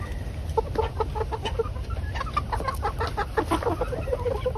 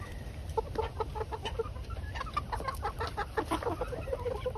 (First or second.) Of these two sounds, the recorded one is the first